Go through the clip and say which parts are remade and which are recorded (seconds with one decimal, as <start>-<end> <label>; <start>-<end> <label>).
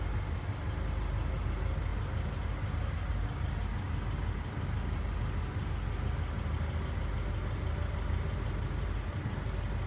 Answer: 0.0-9.9 recorded